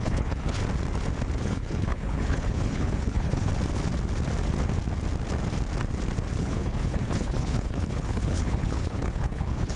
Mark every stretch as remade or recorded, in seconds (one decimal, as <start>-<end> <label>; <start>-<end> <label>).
0.0-0.6 remade; 0.6-1.4 recorded; 1.4-3.5 remade; 3.5-6.4 recorded; 6.4-9.8 remade